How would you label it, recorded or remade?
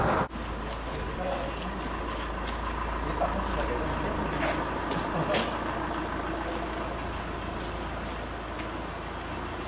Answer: recorded